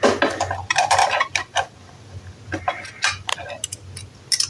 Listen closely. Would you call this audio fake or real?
real